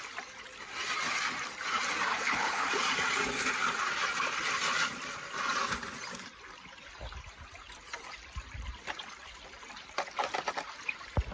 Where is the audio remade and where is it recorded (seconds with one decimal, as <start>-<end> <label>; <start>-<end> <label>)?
0.0-2.1 recorded; 2.1-2.7 remade; 2.7-11.3 recorded